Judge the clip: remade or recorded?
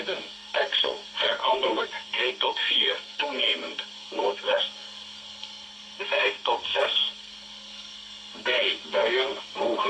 remade